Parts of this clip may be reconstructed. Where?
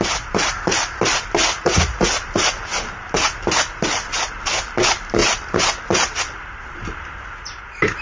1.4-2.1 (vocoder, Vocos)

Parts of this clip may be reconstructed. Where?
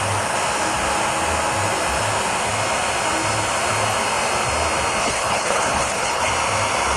5.0-6.3 (codec, HILCodec)